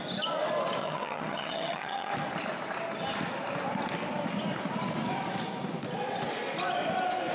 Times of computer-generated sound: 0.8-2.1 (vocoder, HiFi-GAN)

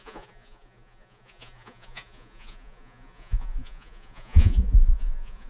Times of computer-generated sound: 0.0-5.5 (vocoder, Vocos)